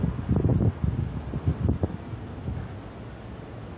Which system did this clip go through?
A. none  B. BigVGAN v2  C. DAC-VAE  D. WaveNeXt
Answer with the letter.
A